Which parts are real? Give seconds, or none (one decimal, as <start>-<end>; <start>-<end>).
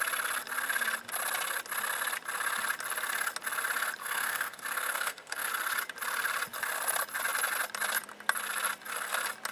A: 0.0-4.0; 5.5-9.5